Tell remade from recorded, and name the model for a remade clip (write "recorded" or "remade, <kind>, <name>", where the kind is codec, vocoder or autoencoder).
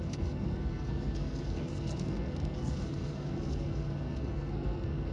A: remade, codec, SNAC